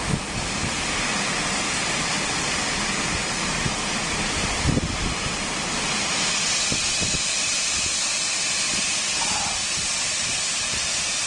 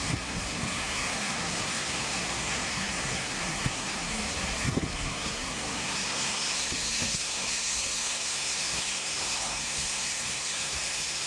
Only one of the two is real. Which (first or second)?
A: first